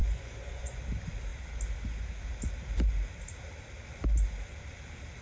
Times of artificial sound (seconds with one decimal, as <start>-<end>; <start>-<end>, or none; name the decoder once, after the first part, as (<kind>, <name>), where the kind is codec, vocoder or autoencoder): 0.0-0.8 (vocoder, Vocos)